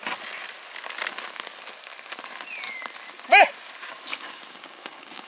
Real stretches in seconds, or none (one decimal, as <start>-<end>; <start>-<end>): 0.0-4.1